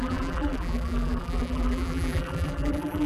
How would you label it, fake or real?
fake